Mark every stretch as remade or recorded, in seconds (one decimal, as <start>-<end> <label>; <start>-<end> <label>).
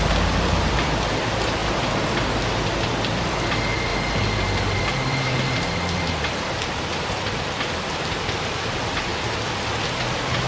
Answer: 0.0-3.9 remade; 3.9-4.8 recorded; 4.8-10.5 remade